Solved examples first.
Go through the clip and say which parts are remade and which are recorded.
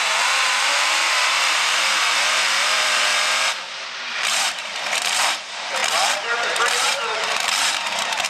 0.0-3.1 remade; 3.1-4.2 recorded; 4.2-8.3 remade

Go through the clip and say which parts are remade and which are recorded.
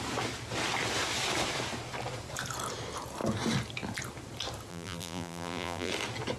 0.0-4.7 recorded; 4.7-5.9 remade; 5.9-6.4 recorded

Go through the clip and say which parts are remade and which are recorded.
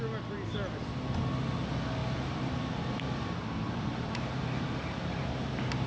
0.0-2.0 recorded; 2.0-5.5 remade; 5.5-5.9 recorded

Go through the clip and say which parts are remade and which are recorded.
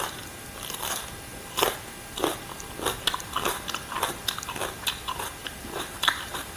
0.0-5.4 recorded; 5.4-6.6 remade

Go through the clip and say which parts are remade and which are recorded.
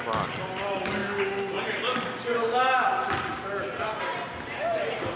0.0-5.2 recorded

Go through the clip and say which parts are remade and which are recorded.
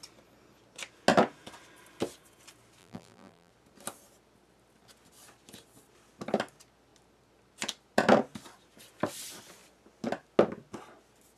0.0-2.8 recorded; 2.8-3.5 remade; 3.5-11.4 recorded